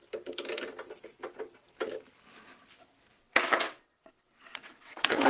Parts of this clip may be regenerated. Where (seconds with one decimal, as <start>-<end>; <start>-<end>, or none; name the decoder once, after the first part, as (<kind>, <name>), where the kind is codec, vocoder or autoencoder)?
3.2-5.3 (vocoder, WaveNeXt)